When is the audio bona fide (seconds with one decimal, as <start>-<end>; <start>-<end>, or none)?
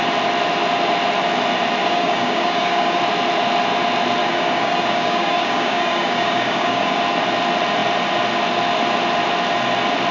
0.0-1.8; 3.0-4.2; 7.0-10.1